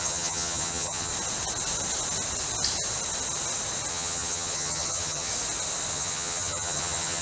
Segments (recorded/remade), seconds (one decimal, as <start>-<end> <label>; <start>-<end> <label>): 0.0-1.1 remade; 1.1-3.9 recorded; 3.9-5.3 remade; 5.3-5.9 recorded; 5.9-7.2 remade